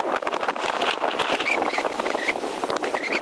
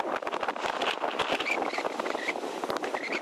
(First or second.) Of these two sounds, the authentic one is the second